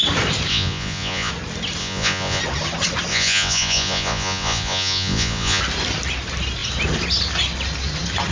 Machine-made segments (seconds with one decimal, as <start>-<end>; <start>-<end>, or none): 0.5-1.3; 1.8-2.4; 3.1-5.6